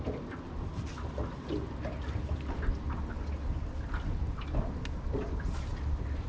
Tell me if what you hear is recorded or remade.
recorded